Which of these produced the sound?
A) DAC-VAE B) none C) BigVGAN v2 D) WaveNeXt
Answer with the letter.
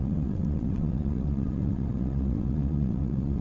D